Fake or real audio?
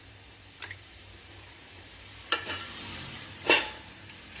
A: fake